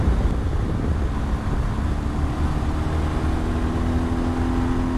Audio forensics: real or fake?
real